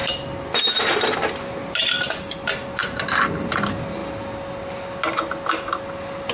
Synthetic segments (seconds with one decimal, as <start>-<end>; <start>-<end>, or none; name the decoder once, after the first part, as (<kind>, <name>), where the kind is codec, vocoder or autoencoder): none